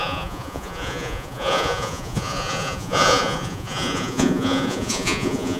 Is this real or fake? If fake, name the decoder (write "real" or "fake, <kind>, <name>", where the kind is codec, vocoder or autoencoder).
fake, vocoder, Vocos